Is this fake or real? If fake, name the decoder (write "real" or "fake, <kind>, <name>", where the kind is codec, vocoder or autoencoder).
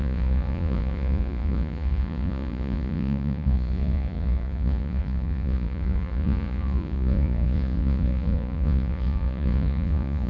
fake, vocoder, Vocos